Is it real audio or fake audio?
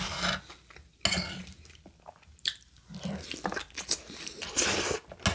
real